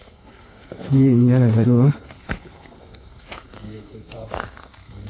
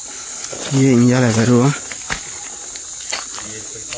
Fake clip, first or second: first